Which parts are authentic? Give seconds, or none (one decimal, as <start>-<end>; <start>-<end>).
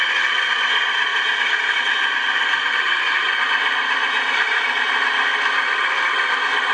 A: 0.0-1.1; 1.8-6.7